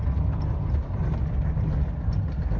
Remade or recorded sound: recorded